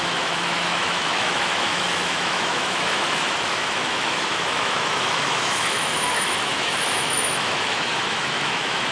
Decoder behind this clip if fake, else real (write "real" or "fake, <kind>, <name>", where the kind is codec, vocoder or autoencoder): fake, autoencoder, DAC-VAE